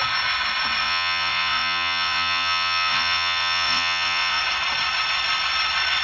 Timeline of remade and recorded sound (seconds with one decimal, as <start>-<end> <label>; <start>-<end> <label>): 0.0-0.8 recorded; 0.8-4.4 remade; 4.4-6.0 recorded